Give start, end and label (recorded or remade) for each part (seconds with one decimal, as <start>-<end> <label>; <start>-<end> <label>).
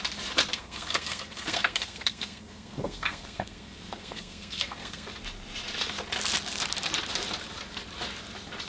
0.0-0.5 recorded; 0.5-5.1 remade; 5.1-8.7 recorded